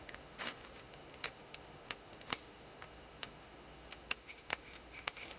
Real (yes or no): no